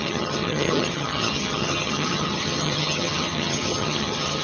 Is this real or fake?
fake